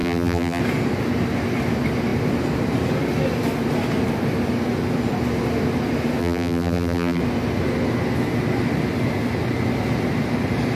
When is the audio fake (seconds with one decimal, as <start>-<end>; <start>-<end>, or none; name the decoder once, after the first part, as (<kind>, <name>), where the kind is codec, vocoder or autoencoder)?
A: 0.0-0.6 (vocoder, BigVGAN v2); 6.2-7.2